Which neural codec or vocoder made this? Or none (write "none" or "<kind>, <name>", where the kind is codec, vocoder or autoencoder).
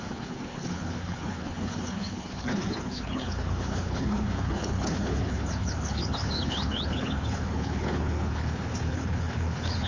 codec, HILCodec